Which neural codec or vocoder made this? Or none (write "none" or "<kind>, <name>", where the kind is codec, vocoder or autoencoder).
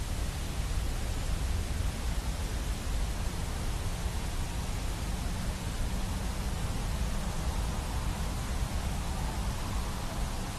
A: none